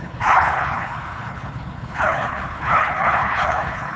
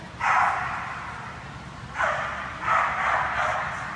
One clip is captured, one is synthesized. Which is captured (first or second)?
second